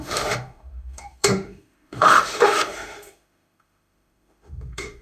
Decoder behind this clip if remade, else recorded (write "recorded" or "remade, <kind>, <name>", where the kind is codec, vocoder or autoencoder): remade, autoencoder, DAC-VAE